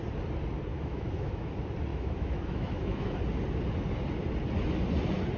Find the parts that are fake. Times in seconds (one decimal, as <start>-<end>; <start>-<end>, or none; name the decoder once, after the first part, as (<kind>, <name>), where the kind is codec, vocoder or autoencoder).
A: 0.7-1.5 (autoencoder, DAC-VAE); 1.9-3.2